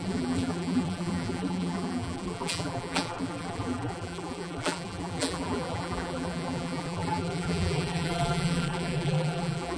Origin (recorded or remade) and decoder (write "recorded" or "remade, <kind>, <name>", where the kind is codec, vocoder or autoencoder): remade, vocoder, BigVGAN v2